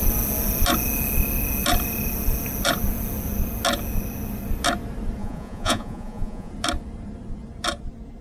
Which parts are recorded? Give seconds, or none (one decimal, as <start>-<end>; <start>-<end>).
0.0-5.2; 6.5-8.2